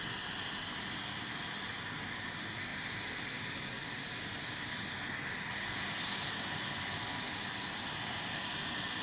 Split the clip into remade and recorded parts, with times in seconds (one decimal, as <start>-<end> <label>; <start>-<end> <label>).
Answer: 0.0-9.0 recorded